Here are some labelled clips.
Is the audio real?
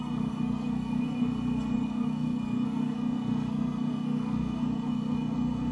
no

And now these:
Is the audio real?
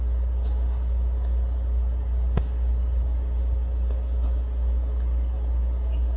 yes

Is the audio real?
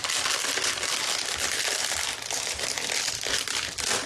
yes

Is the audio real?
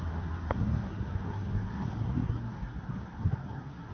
no